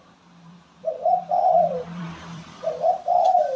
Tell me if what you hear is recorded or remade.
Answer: remade